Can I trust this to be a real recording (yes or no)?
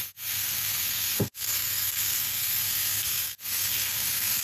no